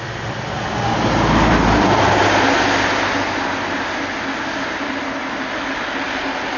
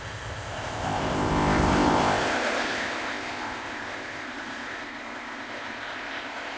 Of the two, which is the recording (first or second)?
first